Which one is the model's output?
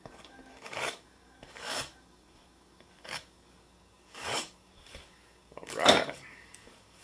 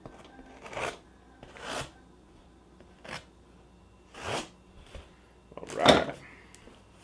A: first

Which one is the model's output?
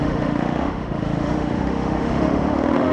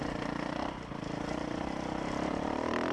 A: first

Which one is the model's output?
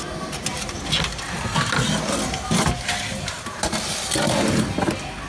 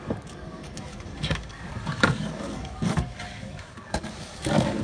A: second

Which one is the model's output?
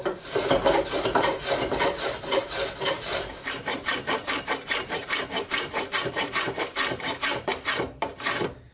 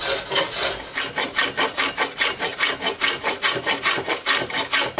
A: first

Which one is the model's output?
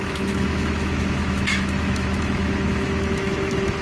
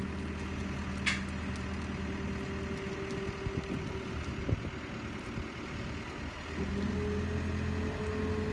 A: first